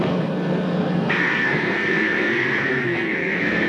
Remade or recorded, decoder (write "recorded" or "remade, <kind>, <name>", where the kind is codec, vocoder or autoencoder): remade, codec, SNAC